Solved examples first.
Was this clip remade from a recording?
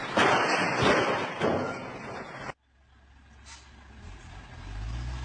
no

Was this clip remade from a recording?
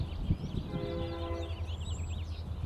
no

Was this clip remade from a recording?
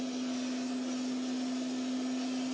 no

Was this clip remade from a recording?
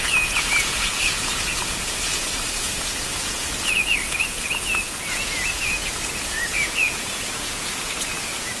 yes